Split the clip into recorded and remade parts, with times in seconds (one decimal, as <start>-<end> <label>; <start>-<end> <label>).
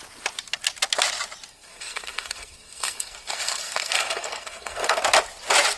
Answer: 0.0-1.5 recorded; 1.5-5.0 remade; 5.0-5.8 recorded